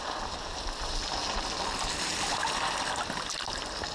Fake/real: real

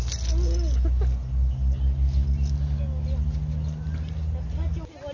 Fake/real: real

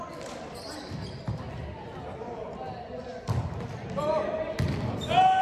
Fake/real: real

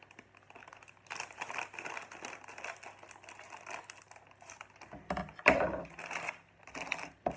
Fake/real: real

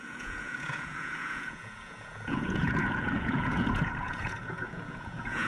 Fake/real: fake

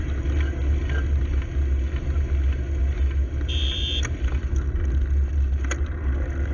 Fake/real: real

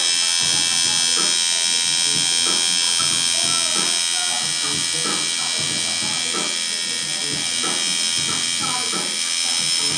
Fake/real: real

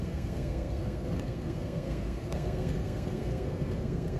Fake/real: fake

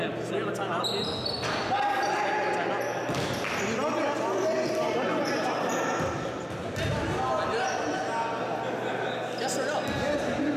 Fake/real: real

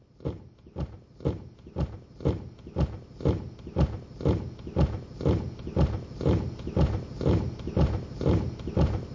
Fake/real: real